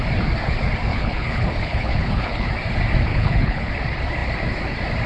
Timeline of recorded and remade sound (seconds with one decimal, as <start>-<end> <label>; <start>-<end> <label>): 0.0-0.9 recorded; 0.9-2.5 remade; 2.5-3.1 recorded; 3.1-3.7 remade; 3.7-5.1 recorded